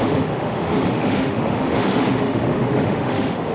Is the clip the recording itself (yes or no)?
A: no